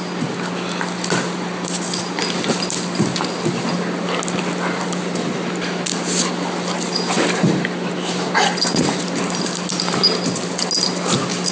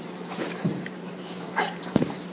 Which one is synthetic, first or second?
second